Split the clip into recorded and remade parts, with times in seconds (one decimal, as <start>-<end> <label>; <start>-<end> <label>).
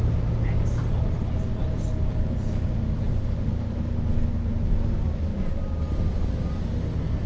0.0-5.3 recorded; 5.3-5.8 remade; 5.8-7.3 recorded